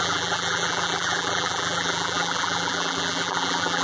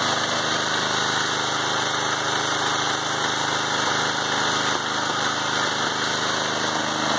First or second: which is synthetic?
first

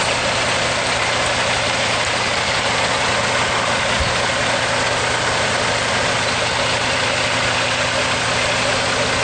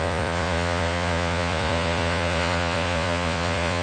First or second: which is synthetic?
second